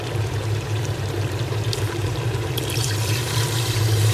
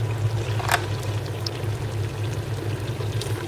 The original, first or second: second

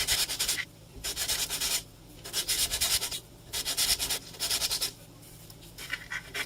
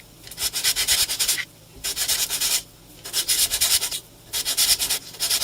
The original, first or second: second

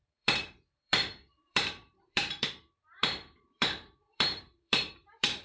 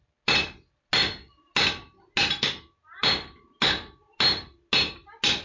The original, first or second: second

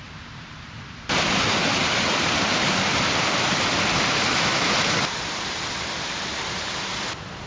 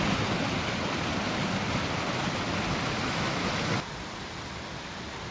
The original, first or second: second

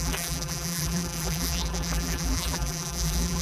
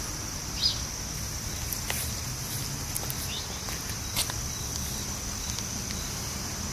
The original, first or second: second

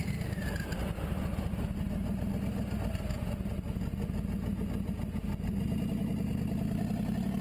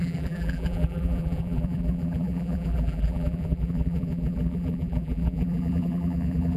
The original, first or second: first